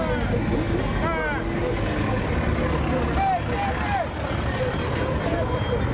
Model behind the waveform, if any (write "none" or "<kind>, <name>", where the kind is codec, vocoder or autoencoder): none